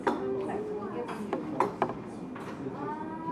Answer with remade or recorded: recorded